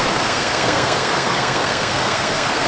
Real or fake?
fake